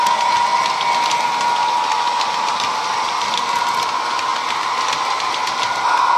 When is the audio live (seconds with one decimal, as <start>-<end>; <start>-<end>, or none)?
0.0-6.2